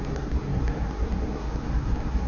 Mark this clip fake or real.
fake